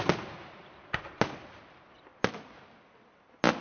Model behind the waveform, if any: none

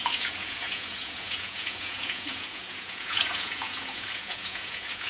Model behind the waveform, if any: vocoder, Vocos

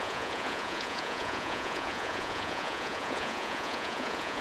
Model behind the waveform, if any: vocoder, Vocos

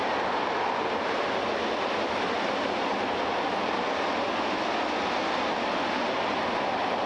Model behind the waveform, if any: none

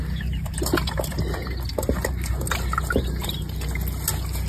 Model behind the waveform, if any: none